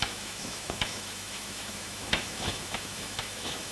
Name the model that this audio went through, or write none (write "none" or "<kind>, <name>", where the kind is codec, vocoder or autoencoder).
autoencoder, DAC-VAE